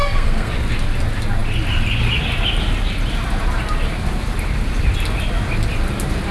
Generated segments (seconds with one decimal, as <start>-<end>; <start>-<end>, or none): 0.0-0.5